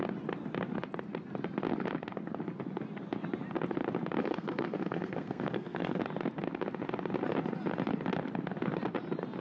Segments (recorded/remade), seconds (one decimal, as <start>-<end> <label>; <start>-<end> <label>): 0.0-4.2 recorded; 4.2-6.0 remade; 6.0-9.4 recorded